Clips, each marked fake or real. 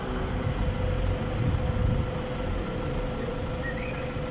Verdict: real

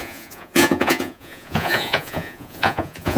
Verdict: fake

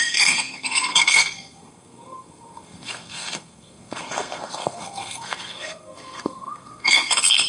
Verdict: fake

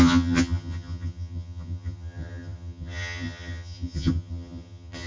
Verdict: fake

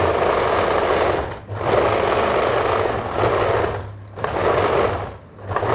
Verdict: real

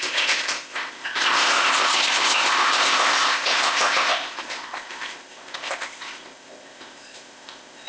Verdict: fake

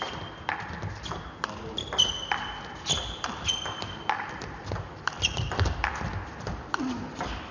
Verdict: real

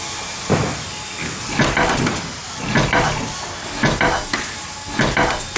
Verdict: real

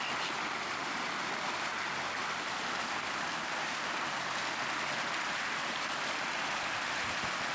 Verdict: real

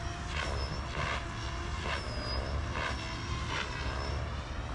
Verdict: real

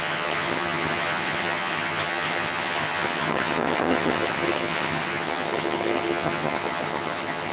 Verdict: fake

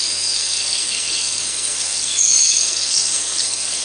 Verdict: fake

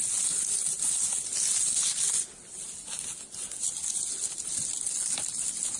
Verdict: real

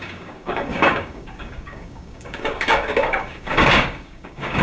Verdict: fake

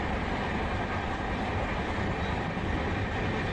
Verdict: real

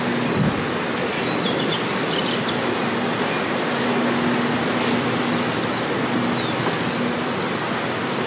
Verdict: real